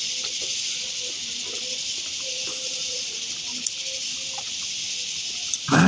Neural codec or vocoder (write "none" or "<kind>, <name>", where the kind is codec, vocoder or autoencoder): none